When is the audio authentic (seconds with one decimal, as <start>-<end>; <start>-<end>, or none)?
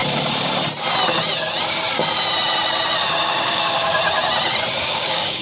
0.0-3.2; 4.0-4.8